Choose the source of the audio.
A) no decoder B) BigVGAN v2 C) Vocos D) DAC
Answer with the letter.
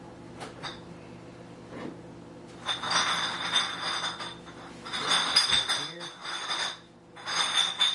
A